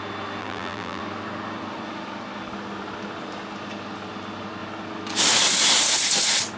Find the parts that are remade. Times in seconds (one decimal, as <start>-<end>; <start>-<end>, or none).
0.4-1.0